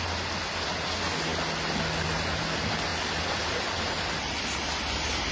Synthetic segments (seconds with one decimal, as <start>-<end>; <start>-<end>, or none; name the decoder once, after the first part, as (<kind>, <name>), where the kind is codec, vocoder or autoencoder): 2.9-3.8 (vocoder, BigVGAN v2)